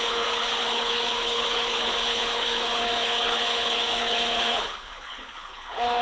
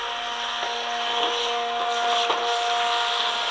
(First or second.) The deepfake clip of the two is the first